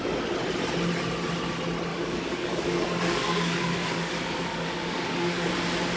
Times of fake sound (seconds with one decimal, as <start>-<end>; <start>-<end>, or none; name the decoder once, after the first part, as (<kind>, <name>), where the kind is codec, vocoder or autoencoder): 1.9-5.5 (codec, DAC)